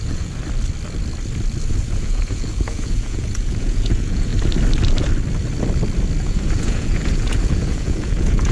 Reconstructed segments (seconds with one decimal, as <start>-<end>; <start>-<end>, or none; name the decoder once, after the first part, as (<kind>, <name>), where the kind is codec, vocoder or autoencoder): 0.0-0.4 (vocoder, Vocos); 1.8-4.3; 6.2-8.5

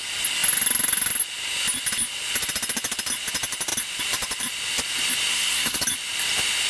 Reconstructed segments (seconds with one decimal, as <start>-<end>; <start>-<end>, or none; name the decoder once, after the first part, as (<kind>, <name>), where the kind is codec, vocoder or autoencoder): 5.3-5.8 (codec, SNAC)